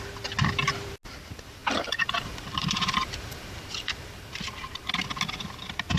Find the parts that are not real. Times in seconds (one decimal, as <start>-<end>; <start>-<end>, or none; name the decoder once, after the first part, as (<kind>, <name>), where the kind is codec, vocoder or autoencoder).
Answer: 1.6-4.9 (vocoder, BigVGAN v2)